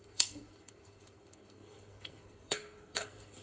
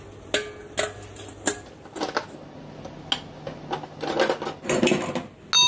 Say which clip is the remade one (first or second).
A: first